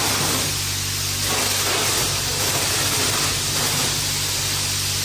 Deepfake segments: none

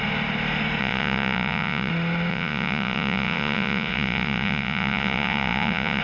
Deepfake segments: 0.8-1.9; 2.3-6.0

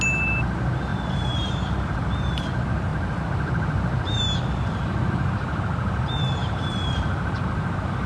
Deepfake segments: 0.9-2.1; 2.9-4.2; 6.4-8.1